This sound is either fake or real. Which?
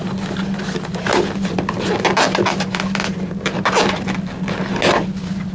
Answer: real